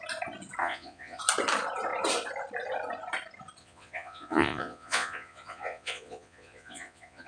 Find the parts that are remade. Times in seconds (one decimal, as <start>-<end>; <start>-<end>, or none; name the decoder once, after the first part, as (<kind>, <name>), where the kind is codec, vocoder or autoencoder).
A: 0.6-1.2 (vocoder, Vocos); 3.6-7.3